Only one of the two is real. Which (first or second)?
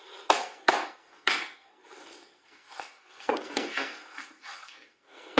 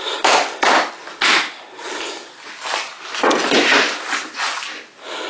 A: second